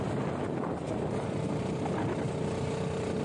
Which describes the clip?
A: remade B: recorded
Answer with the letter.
B